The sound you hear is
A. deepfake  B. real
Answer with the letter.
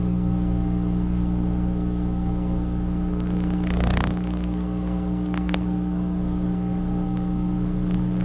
A